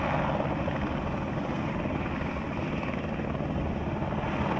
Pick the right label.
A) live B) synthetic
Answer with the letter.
A